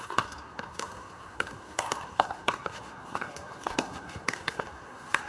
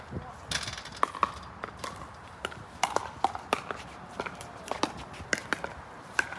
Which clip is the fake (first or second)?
first